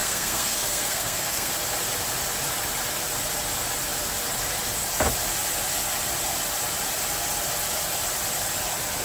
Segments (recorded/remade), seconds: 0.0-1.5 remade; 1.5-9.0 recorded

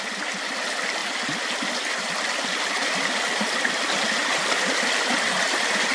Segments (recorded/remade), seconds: 0.0-5.9 recorded

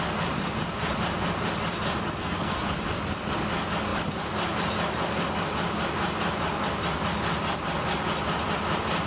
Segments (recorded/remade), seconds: 0.0-2.2 recorded; 2.2-2.7 remade; 2.7-9.1 recorded

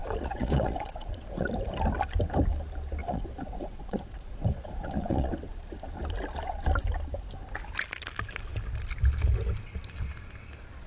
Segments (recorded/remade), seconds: 0.0-1.5 remade; 1.5-3.0 recorded; 3.0-5.3 remade; 5.3-10.9 recorded